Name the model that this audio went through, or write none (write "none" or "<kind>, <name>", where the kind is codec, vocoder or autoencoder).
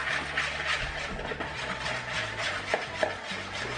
none